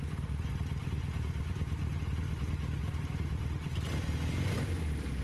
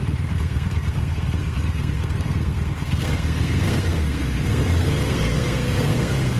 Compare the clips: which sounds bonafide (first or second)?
first